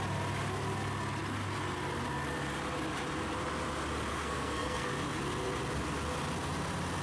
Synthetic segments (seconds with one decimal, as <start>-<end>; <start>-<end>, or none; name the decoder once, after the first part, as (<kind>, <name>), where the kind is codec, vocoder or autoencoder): 4.1-4.9 (codec, SNAC)